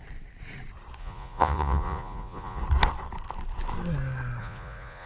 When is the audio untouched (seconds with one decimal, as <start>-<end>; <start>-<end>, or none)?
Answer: 0.0-1.0; 2.6-4.4